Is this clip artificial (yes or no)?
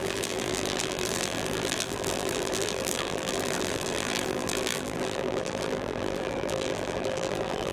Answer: yes